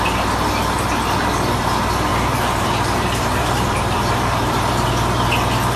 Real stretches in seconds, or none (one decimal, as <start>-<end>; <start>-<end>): 0.0-2.1; 4.9-5.8